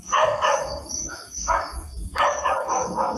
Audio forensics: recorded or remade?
remade